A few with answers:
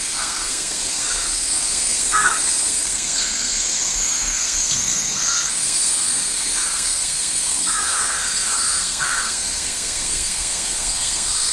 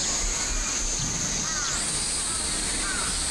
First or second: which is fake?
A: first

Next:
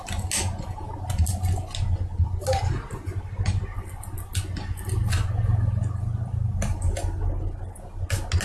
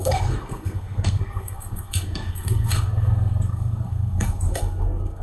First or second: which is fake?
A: second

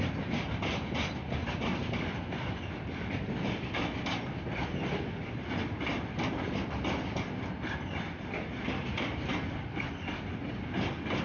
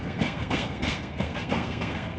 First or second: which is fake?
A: second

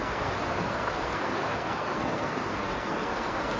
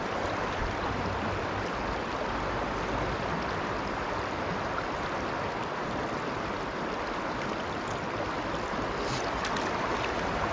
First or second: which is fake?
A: first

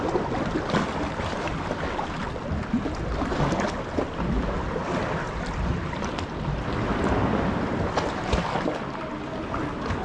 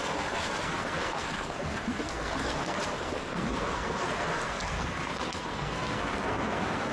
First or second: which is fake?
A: second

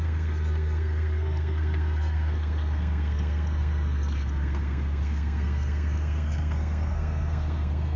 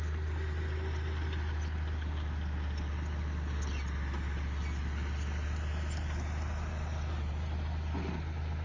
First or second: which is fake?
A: first